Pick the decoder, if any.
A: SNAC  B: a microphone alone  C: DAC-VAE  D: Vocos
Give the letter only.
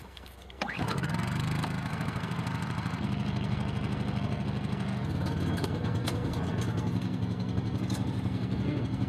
A